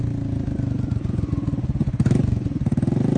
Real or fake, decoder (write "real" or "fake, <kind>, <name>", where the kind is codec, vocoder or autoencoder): real